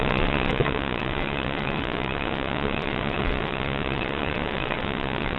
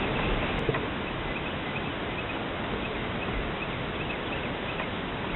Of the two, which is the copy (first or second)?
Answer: first